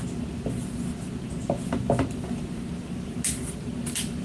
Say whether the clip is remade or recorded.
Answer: recorded